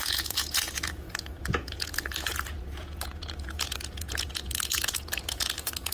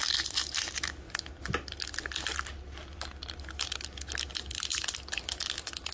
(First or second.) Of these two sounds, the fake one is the first